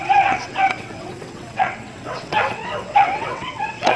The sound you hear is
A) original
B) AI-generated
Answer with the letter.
B